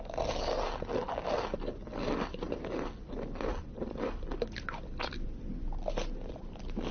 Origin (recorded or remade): recorded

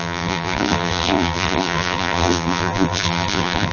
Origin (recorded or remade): remade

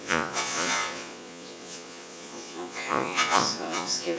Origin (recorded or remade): remade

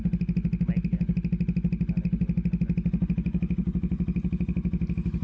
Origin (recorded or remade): recorded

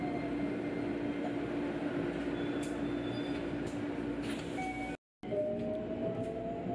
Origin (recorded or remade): recorded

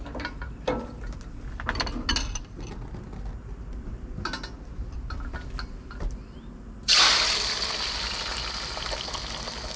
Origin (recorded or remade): recorded